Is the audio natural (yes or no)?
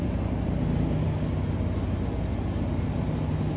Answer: yes